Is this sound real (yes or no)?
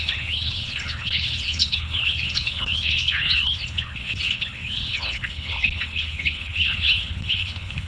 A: no